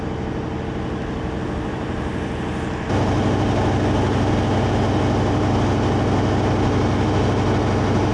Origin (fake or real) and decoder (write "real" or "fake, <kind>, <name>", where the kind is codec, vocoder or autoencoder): real